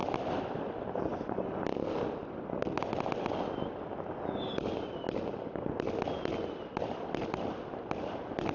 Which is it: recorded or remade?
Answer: recorded